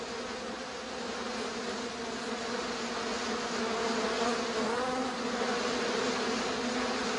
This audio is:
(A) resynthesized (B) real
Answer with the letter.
B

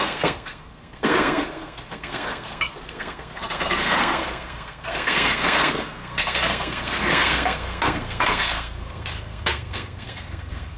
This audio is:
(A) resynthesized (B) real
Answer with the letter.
A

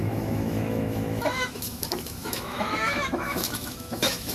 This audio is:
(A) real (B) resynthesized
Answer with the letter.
B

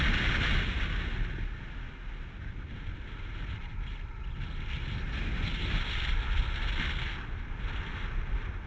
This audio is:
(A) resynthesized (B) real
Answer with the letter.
B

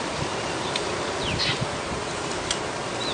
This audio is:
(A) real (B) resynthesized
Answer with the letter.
A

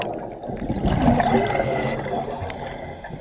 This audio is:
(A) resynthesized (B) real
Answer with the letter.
B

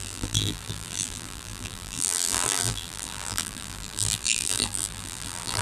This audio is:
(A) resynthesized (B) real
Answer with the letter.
A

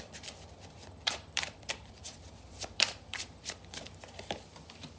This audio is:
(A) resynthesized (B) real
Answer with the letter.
A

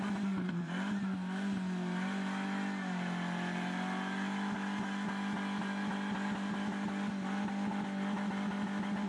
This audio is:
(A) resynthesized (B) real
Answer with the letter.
B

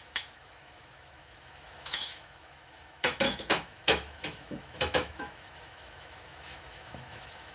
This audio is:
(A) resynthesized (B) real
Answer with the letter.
A